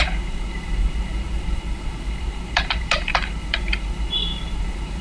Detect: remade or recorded remade